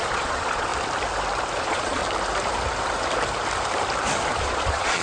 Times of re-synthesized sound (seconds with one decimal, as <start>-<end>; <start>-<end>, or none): 0.0-0.7; 1.6-2.0; 4.4-5.0